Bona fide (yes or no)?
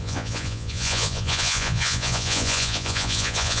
no